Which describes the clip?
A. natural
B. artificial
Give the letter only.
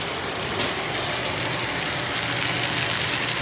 A